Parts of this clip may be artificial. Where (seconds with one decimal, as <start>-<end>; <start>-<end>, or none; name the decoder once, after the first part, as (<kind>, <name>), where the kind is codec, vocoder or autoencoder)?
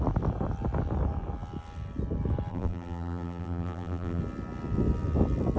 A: 2.5-4.2 (vocoder, BigVGAN v2)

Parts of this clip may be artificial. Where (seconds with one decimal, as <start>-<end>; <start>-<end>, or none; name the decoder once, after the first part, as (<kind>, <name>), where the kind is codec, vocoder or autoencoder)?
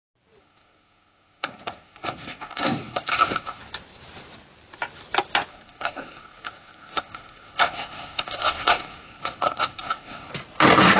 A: 0.4-3.6 (codec, SNAC); 5.5-10.3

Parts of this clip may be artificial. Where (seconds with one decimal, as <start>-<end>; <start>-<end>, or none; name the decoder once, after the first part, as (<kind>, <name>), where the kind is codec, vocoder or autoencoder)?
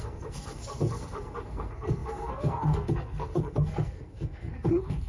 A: 0.0-5.1 (codec, SNAC)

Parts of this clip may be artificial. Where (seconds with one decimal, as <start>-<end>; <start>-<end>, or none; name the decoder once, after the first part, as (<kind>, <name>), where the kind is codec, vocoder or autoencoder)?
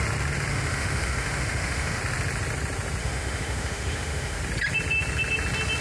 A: 0.5-2.0 (autoencoder, DAC-VAE); 3.0-4.4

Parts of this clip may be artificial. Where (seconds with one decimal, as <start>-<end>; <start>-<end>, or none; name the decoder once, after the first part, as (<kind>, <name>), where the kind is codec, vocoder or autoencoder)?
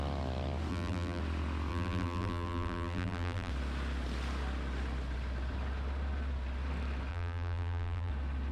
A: 0.7-1.2 (vocoder, BigVGAN v2); 1.7-3.5; 7.1-8.1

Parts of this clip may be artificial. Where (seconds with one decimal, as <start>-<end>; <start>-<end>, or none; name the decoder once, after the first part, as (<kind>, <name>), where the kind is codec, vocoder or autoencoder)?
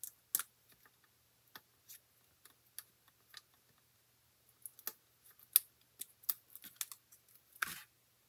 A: none